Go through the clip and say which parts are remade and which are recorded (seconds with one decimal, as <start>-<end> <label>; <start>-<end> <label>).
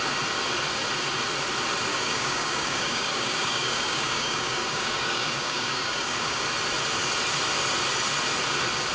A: 0.0-1.9 recorded; 1.9-6.4 remade; 6.4-8.9 recorded